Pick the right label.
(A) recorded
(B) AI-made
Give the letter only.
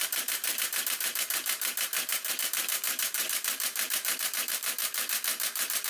B